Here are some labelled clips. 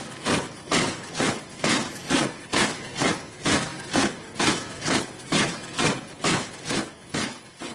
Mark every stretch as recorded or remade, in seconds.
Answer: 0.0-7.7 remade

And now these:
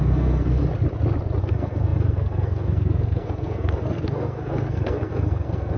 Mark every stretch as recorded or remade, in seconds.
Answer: 0.0-0.6 remade; 0.6-1.4 recorded; 1.4-5.8 remade

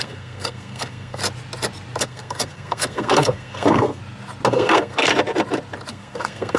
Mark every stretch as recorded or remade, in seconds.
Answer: 0.0-1.2 remade; 1.2-2.0 recorded; 2.0-4.0 remade; 4.0-4.5 recorded; 4.5-5.1 remade; 5.1-5.9 recorded; 5.9-6.6 remade